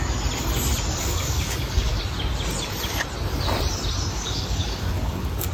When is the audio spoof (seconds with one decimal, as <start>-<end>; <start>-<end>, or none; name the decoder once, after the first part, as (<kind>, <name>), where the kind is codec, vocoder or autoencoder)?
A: 0.9-2.0 (codec, DAC); 4.1-5.5